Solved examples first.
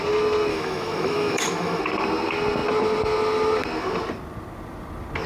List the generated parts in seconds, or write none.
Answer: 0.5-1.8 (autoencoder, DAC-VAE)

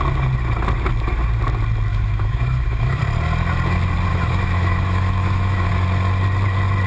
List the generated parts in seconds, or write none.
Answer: 1.9-3.0 (autoencoder, DAC-VAE); 4.1-5.7

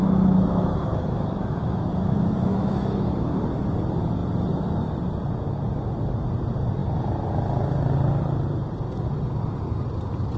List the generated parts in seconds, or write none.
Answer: 0.0-3.3 (autoencoder, DAC-VAE)

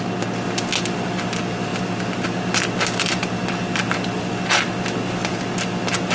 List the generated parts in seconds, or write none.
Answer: none

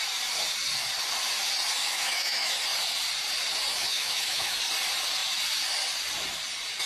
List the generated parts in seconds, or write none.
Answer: 1.8-2.5 (autoencoder, DAC-VAE); 3.7-4.6

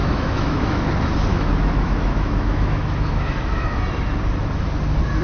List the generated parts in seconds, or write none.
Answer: 0.0-0.9 (autoencoder, DAC-VAE); 1.3-3.8